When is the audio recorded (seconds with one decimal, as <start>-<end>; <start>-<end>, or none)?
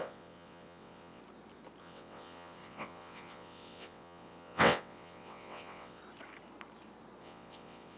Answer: 1.2-1.8; 6.0-7.2